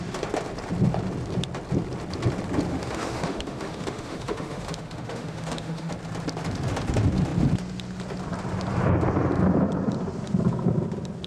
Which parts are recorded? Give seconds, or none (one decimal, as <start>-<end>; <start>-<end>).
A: 0.0-2.7; 5.9-11.3